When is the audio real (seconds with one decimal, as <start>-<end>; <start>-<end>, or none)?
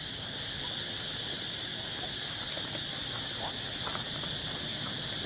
0.0-5.3